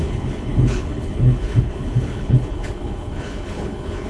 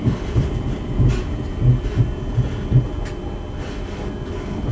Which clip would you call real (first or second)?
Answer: second